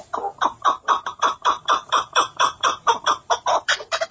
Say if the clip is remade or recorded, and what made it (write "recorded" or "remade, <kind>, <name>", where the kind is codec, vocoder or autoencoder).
remade, vocoder, BigVGAN v2